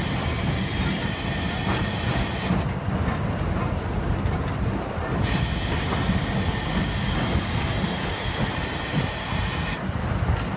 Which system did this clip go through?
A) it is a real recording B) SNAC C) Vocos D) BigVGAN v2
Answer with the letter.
A